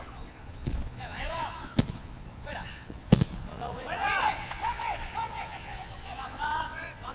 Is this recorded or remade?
remade